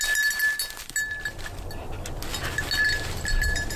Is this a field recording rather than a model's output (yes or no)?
yes